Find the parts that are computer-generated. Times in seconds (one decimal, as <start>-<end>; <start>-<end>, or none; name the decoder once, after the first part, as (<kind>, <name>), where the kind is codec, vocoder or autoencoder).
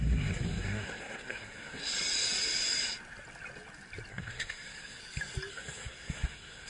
0.0-1.8 (codec, SNAC); 4.1-5.0; 5.5-6.7